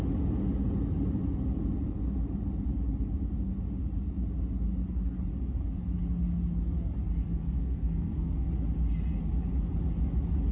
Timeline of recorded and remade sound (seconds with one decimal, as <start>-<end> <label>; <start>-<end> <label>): 0.0-7.2 recorded; 7.2-8.5 remade; 8.5-10.5 recorded